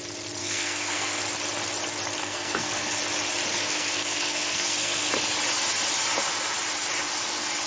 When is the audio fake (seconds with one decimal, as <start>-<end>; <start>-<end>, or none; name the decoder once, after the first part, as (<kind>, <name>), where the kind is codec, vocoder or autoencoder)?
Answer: 0.4-1.2 (codec, SNAC); 2.2-3.0; 3.5-5.1